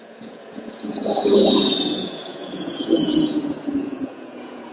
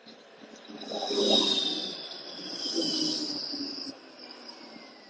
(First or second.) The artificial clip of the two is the first